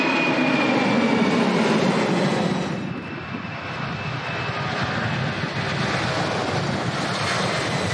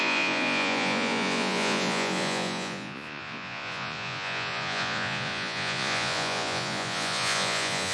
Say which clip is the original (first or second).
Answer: first